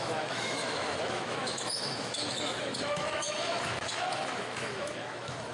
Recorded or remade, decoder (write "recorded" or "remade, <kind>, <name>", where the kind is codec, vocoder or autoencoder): remade, autoencoder, DAC-VAE